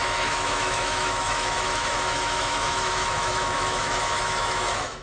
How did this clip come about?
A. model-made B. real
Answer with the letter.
A